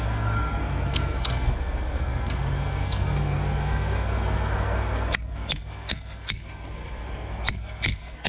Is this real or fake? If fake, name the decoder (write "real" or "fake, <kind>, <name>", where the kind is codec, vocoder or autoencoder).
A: fake, codec, SNAC